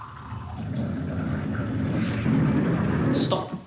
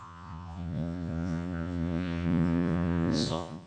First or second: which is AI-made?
second